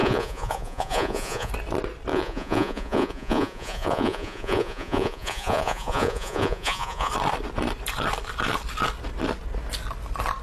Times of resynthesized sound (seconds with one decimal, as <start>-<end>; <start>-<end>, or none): 0.0-1.5; 2.1-7.1